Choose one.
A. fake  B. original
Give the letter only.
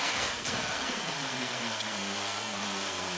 A